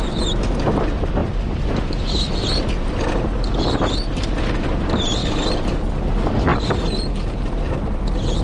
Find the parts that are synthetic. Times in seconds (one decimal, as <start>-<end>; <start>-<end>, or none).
none